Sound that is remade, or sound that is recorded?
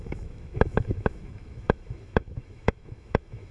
remade